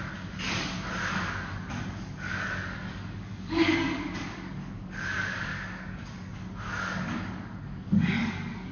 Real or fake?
fake